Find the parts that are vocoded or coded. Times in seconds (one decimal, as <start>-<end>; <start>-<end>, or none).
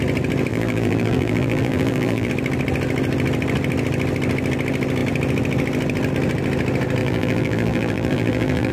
0.5-2.3; 7.0-8.7